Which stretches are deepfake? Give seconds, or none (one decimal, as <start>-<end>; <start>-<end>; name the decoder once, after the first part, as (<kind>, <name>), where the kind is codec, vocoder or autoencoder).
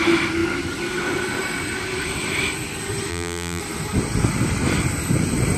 3.1-3.6 (vocoder, BigVGAN v2)